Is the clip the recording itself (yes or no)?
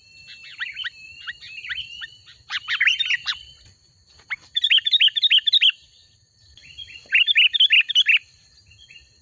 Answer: yes